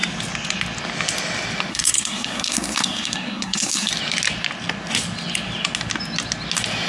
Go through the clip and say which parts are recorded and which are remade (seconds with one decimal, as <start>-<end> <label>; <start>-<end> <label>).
0.0-1.7 recorded; 1.7-3.9 remade; 3.9-6.9 recorded